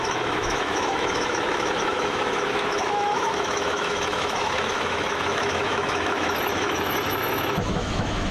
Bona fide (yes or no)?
no